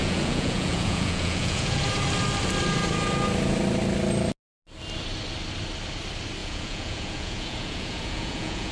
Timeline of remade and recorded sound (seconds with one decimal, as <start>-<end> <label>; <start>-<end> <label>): 0.0-1.8 remade; 1.8-6.4 recorded; 6.4-8.7 remade